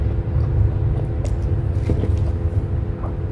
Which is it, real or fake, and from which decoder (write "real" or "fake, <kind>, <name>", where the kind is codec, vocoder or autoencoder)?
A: real